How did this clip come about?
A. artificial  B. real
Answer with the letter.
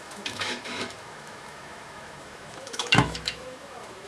A